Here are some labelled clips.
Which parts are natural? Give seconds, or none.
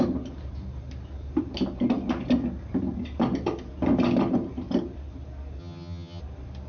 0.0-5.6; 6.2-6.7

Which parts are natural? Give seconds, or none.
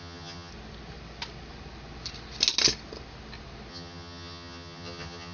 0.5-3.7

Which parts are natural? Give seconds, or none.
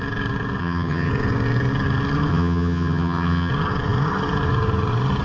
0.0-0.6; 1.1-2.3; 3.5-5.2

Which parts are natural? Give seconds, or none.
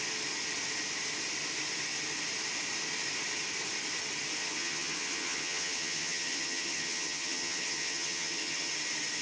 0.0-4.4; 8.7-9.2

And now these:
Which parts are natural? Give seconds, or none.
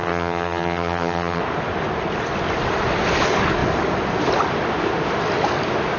1.4-6.0